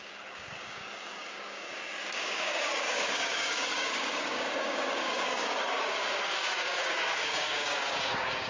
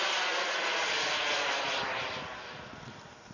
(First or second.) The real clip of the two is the second